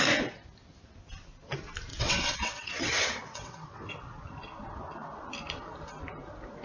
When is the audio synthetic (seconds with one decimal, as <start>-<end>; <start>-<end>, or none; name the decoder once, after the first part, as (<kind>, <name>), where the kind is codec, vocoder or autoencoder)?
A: 1.9-3.9 (vocoder, WaveNeXt)